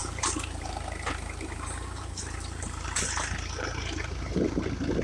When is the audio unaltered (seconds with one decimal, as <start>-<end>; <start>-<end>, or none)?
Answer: 3.0-4.0; 4.6-5.0